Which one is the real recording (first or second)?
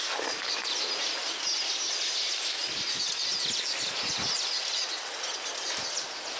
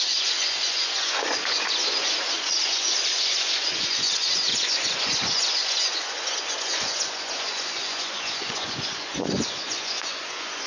first